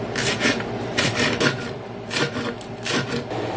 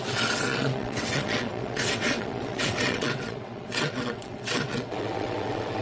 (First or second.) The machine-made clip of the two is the second